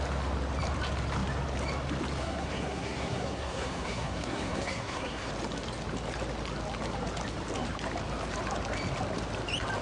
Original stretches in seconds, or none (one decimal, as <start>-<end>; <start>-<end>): 0.0-2.2; 5.3-9.8